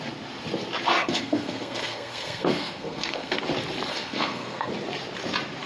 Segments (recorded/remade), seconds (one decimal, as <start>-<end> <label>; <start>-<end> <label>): 0.0-1.0 recorded; 1.0-3.4 remade; 3.4-3.9 recorded; 3.9-4.7 remade; 4.7-5.7 recorded